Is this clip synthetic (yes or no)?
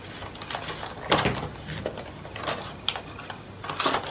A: no